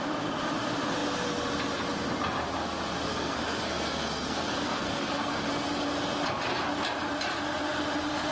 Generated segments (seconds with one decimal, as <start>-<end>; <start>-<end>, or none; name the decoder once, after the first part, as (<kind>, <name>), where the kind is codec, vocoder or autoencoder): 3.1-5.5 (codec, SNAC)